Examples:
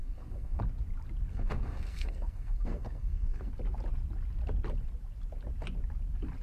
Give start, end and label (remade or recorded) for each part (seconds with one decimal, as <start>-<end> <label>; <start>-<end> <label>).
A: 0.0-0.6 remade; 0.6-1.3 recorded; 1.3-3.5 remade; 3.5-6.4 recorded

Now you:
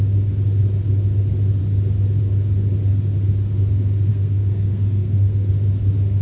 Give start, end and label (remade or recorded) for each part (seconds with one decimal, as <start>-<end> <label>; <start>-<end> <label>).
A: 0.0-4.1 recorded; 4.1-5.5 remade; 5.5-6.2 recorded

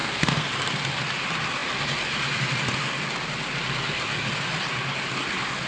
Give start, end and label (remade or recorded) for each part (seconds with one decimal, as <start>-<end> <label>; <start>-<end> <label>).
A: 0.0-0.5 remade; 0.5-5.7 recorded